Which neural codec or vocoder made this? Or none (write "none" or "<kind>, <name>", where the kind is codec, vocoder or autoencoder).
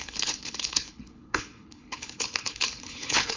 codec, HILCodec